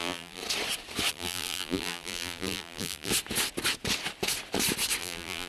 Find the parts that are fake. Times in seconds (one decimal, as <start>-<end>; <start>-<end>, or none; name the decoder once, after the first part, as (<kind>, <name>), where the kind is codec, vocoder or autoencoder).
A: 0.0-0.4 (vocoder, BigVGAN v2); 1.1-3.1; 5.0-5.5